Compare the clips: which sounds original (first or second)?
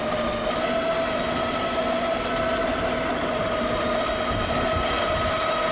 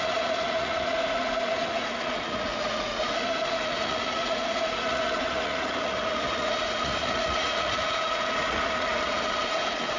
first